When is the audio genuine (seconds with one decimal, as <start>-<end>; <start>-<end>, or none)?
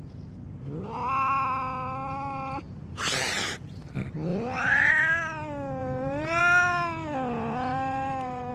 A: 0.0-4.3; 4.9-5.8; 6.4-7.7